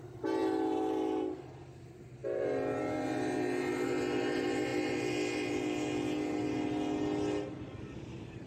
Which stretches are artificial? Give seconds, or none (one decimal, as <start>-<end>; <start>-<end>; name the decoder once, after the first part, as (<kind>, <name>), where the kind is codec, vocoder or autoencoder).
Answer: none